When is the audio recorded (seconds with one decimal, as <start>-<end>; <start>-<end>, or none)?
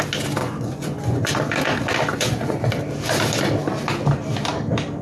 0.0-0.4; 1.3-2.1; 2.7-5.0